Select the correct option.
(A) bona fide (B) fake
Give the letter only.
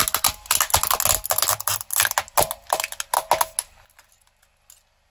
A